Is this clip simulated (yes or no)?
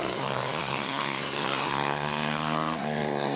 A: yes